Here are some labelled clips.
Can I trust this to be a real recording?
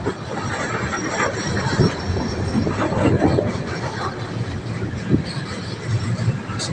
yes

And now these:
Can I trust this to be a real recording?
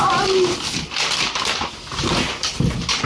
yes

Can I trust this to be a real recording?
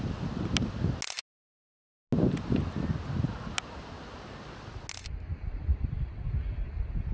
yes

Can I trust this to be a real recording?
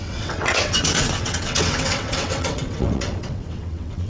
no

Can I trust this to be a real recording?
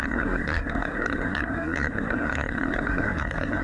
no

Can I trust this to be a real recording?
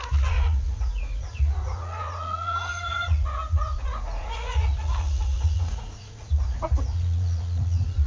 no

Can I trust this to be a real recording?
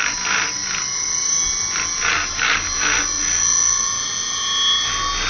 yes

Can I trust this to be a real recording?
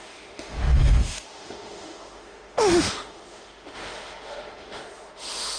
no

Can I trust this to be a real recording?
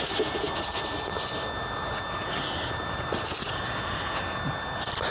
yes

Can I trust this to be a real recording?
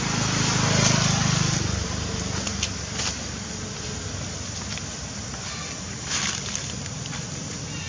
yes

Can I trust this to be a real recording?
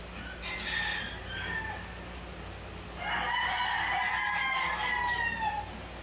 yes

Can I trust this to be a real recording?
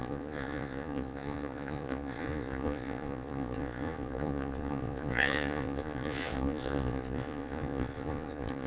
no